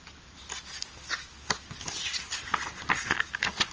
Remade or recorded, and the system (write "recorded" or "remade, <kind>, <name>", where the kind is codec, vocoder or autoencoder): recorded